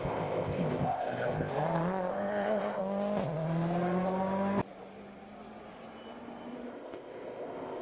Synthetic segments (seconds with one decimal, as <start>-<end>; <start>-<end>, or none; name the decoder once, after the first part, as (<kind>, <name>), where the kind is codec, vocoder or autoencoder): 0.0-1.5 (codec, ZipCodec); 2.1-2.8; 6.7-7.8